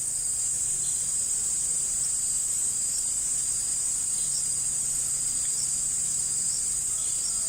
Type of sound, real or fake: real